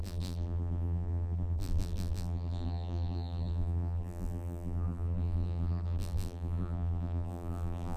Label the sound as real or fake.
fake